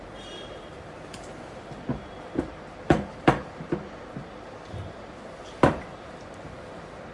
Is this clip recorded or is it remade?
remade